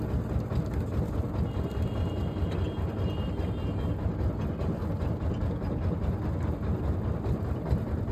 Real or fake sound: real